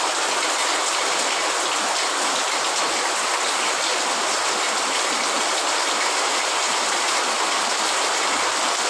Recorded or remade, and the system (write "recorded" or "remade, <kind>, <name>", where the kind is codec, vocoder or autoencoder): recorded